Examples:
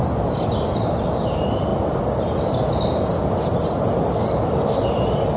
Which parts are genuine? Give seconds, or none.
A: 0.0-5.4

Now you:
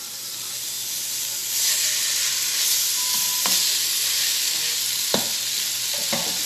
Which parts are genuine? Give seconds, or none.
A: 0.0-6.5

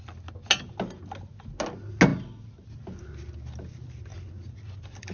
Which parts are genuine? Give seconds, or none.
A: 0.0-4.1

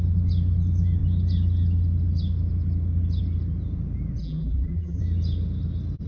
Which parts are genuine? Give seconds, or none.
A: 0.0-4.2; 5.0-6.1

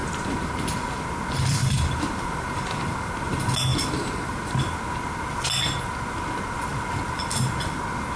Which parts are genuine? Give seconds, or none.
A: 0.6-1.6; 3.1-3.7; 4.6-8.2

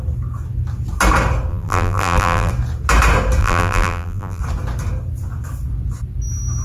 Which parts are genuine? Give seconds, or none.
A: 0.0-1.5; 2.5-3.4; 4.4-6.6

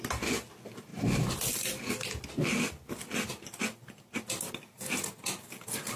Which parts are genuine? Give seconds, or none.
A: 0.0-6.0